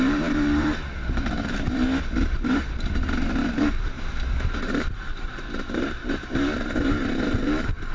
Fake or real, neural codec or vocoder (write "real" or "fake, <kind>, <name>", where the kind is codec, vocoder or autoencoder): fake, vocoder, BigVGAN v2